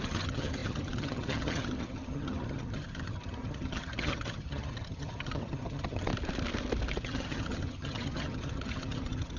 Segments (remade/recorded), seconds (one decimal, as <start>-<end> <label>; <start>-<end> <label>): 0.0-6.1 remade; 6.1-7.0 recorded; 7.0-9.4 remade